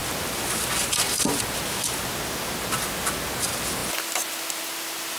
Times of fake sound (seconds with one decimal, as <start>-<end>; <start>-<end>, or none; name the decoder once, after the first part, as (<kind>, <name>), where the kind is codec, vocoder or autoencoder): none